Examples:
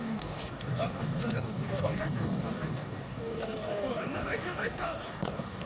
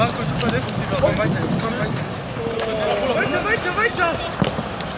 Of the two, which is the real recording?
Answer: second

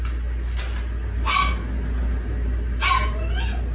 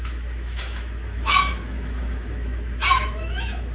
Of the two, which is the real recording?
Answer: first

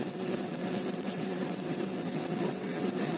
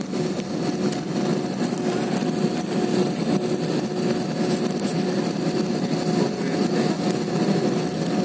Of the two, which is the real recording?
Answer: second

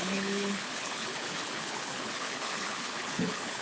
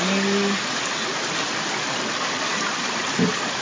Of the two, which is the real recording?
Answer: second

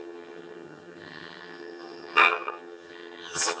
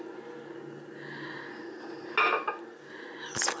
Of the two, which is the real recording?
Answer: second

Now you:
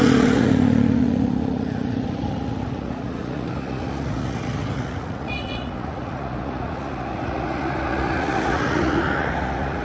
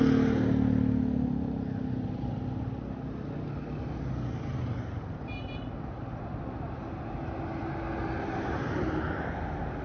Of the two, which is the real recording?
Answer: second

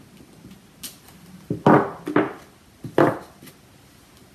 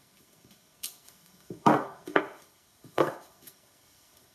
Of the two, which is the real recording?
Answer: first